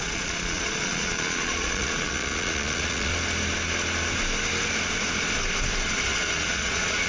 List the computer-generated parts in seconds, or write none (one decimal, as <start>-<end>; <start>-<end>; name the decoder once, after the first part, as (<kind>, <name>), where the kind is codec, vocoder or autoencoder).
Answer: 0.0-3.1 (vocoder, Vocos); 6.0-7.1